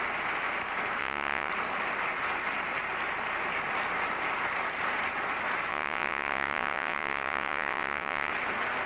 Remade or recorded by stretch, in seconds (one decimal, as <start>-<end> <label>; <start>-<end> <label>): 0.0-1.0 recorded; 1.0-1.5 remade; 1.5-5.7 recorded; 5.7-8.3 remade; 8.3-8.9 recorded